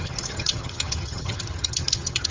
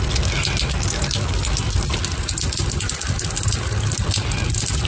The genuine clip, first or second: second